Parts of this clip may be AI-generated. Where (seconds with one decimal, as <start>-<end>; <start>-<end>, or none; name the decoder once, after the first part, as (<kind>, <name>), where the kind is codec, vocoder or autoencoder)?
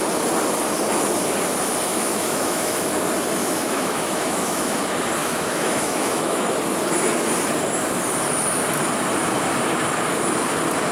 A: 1.9-2.9 (autoencoder, DAC-VAE); 3.4-4.8; 5.2-6.4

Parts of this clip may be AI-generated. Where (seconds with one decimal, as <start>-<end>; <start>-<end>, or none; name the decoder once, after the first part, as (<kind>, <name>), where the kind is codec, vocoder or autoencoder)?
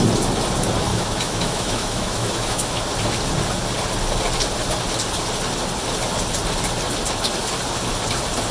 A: 0.9-2.8 (autoencoder, DAC-VAE)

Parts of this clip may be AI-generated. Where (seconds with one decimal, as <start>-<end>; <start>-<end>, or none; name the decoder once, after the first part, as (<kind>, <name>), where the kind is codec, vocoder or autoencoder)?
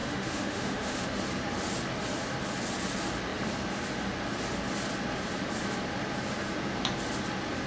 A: 0.0-1.2 (autoencoder, DAC-VAE)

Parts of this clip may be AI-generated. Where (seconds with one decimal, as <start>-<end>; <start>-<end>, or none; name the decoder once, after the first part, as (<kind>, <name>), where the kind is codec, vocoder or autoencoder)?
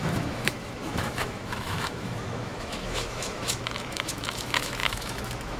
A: 0.0-5.6 (autoencoder, DAC-VAE)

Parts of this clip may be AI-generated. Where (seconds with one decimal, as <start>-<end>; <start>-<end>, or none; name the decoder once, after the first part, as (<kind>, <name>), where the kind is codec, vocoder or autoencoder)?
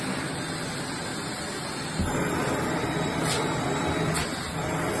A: none